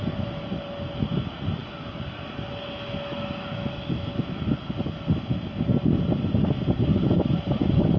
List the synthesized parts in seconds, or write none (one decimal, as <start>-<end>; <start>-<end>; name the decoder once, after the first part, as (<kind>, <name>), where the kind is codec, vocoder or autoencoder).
none